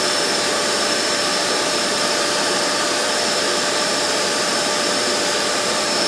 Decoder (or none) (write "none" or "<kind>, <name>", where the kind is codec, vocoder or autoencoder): vocoder, BigVGAN v2